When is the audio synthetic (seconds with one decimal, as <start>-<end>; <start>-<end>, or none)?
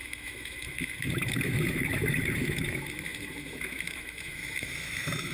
0.0-5.3